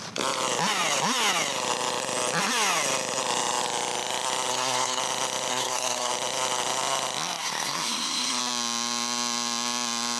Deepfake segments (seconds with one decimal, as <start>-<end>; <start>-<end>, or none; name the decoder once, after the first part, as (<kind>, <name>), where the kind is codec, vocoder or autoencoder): 4.5-5.0 (codec, SNAC); 5.5-6.1; 7.4-8.4